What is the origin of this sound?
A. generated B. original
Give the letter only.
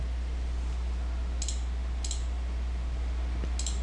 B